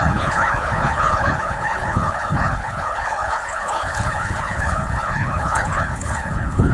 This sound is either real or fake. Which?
fake